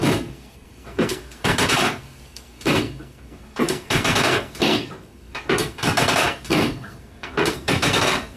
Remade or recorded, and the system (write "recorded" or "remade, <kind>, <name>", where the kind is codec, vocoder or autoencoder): remade, codec, SNAC